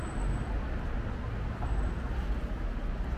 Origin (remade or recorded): recorded